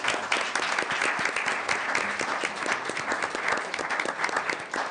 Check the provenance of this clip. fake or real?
real